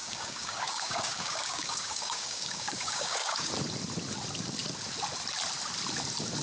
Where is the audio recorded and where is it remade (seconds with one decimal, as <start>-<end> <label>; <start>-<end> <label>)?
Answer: 0.0-3.5 remade; 3.5-6.4 recorded